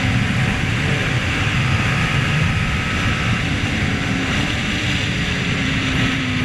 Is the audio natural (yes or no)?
no